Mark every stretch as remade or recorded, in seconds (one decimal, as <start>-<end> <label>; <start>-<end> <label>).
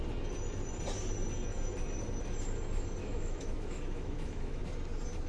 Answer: 0.0-3.0 recorded; 3.0-4.6 remade; 4.6-5.3 recorded